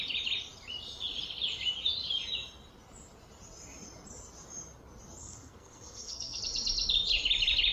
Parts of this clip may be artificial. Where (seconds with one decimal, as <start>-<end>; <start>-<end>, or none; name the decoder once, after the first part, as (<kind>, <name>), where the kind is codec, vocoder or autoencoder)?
5.2-6.4 (codec, SNAC)